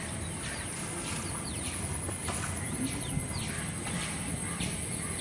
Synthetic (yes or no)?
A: no